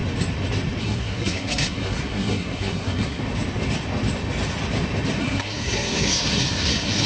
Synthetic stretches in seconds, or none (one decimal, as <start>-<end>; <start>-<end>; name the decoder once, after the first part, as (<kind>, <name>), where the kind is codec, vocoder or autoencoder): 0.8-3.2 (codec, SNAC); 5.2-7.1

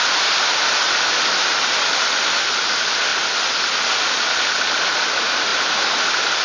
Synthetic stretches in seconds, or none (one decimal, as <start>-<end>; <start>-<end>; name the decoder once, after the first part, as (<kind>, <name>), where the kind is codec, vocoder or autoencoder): none

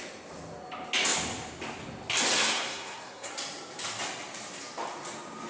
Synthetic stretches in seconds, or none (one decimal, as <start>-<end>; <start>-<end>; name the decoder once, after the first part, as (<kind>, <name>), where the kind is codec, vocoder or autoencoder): 2.5-3.3 (codec, SNAC)